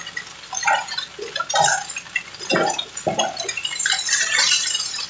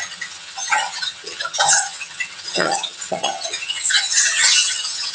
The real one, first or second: first